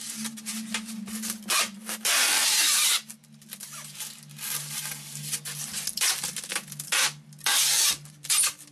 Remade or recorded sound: recorded